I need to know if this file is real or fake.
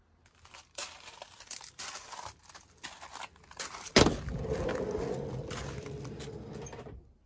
real